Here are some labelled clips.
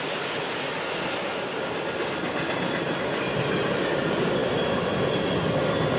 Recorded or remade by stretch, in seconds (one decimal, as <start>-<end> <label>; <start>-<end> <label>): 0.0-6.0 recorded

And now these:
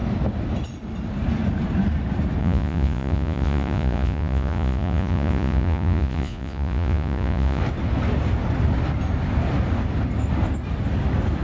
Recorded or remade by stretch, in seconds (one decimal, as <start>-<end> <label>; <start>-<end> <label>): 0.0-2.4 recorded; 2.4-7.6 remade; 7.6-11.4 recorded

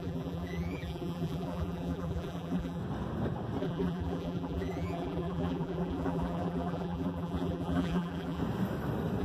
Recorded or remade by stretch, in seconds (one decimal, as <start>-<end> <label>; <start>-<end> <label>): 0.0-2.8 remade; 2.8-3.6 recorded; 3.6-8.4 remade; 8.4-9.2 recorded

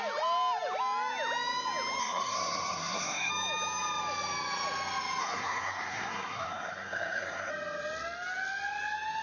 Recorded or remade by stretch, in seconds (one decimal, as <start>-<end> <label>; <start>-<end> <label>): 0.0-2.0 recorded; 2.0-3.3 remade; 3.3-5.2 recorded; 5.2-7.5 remade; 7.5-9.2 recorded

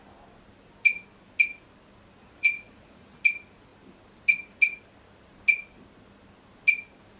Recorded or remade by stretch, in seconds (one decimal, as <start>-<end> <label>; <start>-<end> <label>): 0.0-2.2 recorded; 2.2-3.2 remade; 3.2-7.2 recorded

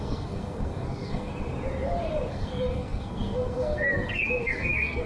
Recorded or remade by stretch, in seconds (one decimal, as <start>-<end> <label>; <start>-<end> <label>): 0.0-1.3 remade; 1.3-2.3 recorded; 2.3-5.1 remade

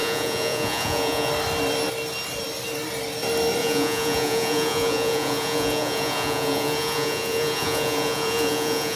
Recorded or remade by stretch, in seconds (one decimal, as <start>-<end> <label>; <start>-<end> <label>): 0.0-1.3 remade; 1.3-3.6 recorded; 3.6-9.0 remade

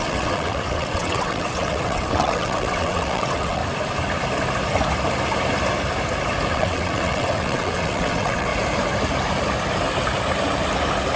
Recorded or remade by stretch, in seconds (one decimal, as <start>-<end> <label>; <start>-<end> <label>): 0.0-3.6 remade; 3.6-6.5 recorded; 6.5-8.5 remade; 8.5-11.2 recorded